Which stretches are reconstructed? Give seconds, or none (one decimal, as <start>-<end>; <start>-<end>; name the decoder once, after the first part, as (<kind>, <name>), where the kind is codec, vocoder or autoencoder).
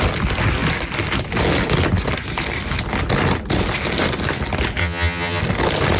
4.8-5.4 (vocoder, HiFi-GAN)